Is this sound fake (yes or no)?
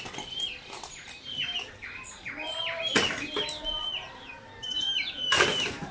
no